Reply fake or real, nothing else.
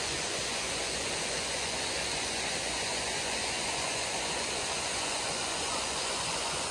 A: fake